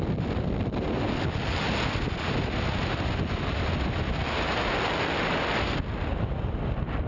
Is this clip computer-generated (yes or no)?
no